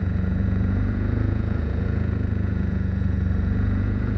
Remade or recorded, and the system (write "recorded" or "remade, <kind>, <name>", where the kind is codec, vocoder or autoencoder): remade, vocoder, Vocos